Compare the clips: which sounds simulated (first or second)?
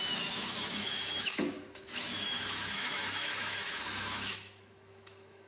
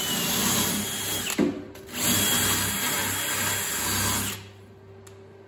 first